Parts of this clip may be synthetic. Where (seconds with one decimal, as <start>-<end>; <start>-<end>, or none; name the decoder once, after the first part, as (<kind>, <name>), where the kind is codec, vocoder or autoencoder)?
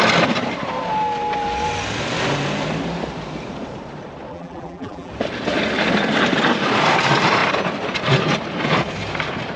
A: 4.3-5.1 (vocoder, BigVGAN v2)